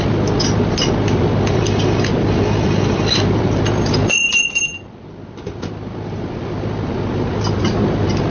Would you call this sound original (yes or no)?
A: yes